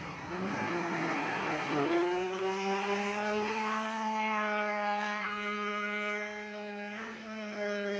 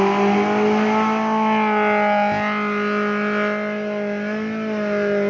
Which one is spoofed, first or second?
first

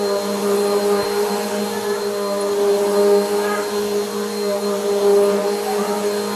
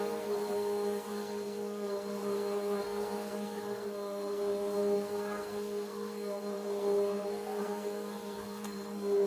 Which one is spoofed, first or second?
second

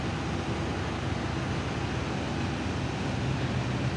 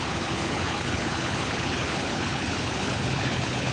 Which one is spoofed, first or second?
second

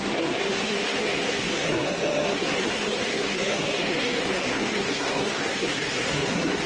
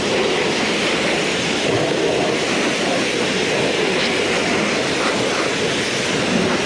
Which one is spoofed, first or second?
first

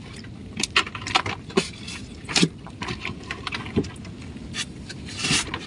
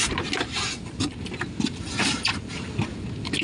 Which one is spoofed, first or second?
first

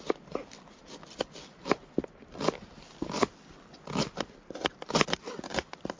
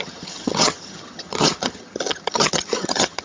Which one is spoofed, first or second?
second